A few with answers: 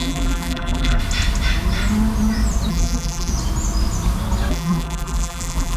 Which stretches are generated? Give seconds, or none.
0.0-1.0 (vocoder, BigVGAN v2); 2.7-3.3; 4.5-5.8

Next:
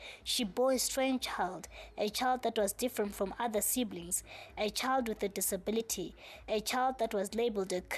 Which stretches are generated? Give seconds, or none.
none

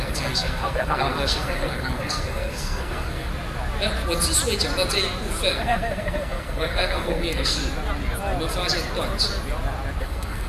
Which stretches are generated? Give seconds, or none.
0.0-3.3 (codec, SNAC); 5.5-7.6; 10.0-10.5

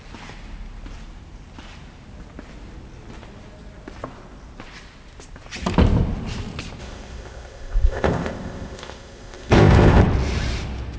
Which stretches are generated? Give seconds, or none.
6.8-10.0 (codec, ZipCodec)

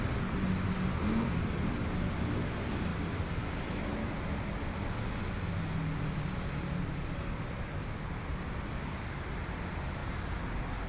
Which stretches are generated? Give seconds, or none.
none

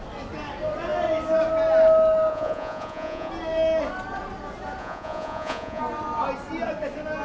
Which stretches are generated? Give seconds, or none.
2.3-3.3 (vocoder, Vocos); 4.8-5.8